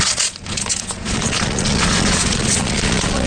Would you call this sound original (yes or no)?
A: no